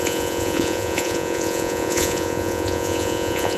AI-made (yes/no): yes